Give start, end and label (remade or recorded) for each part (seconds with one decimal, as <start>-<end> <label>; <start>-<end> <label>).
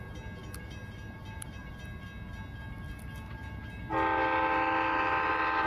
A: 0.0-0.4 recorded; 0.4-1.7 remade; 1.7-5.7 recorded